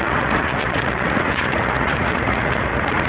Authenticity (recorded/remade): remade